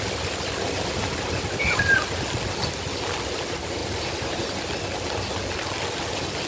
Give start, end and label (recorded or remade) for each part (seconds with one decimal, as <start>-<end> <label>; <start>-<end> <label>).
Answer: 0.0-3.8 recorded; 3.8-4.7 remade; 4.7-6.5 recorded